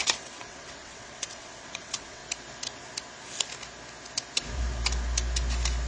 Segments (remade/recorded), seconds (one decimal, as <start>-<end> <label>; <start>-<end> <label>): 0.0-2.2 remade; 2.2-5.9 recorded